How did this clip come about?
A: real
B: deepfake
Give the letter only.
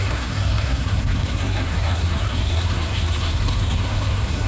B